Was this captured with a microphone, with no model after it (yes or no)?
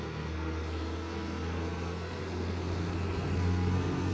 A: no